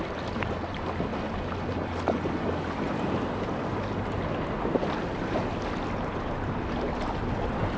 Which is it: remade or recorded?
recorded